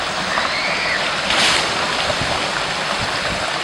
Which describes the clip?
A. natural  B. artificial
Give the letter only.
A